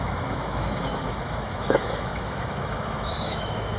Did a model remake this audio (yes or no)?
yes